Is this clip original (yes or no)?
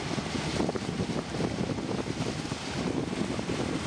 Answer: no